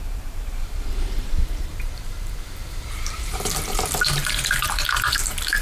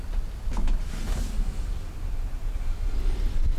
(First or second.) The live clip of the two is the second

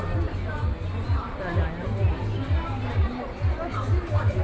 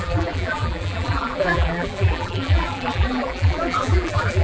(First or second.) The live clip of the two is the first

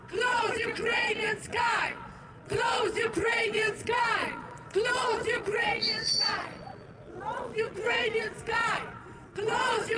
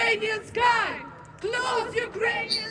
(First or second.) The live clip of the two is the second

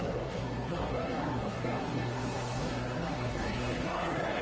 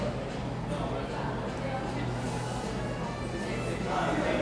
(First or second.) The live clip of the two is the second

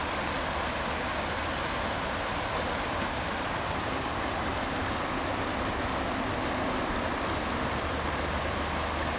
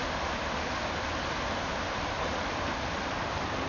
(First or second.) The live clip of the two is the first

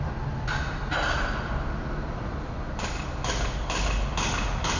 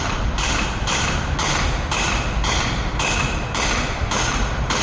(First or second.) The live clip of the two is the first